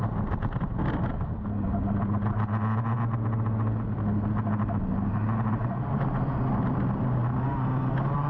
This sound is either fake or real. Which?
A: real